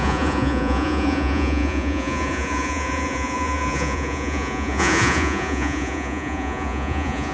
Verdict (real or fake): fake